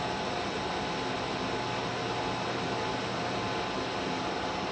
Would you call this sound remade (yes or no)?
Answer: no